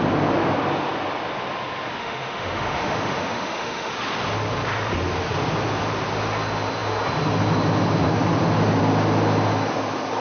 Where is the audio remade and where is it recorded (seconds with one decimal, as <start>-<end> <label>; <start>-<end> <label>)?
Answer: 0.0-2.0 recorded; 2.0-3.9 remade; 3.9-10.2 recorded